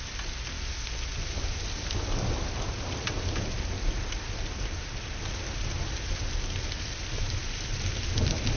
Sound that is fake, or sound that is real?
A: real